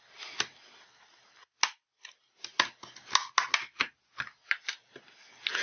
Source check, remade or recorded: recorded